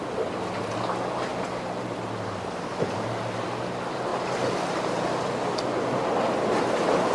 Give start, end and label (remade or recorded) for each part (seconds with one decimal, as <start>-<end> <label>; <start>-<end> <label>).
0.0-7.1 recorded